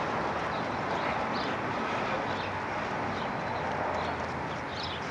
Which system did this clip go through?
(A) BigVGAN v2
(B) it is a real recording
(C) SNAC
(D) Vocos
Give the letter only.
B